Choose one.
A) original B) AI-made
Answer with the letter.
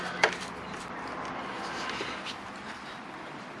A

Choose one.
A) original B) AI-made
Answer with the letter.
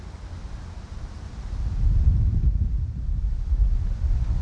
A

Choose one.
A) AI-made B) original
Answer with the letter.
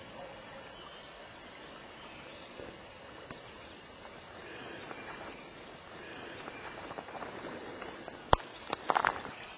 B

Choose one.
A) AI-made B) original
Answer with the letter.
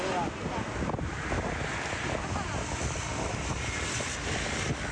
B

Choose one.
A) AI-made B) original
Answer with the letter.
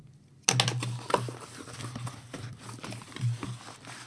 B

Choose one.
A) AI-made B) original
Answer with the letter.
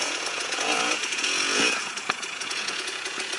A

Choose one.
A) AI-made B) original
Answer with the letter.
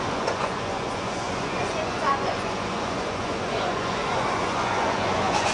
A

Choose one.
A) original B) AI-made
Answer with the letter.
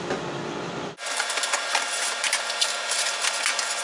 A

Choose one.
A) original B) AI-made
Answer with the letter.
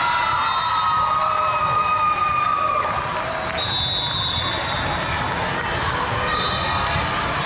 A